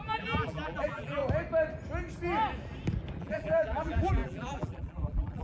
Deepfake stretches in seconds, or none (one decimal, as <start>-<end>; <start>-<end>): 0.0-1.2; 3.2-5.4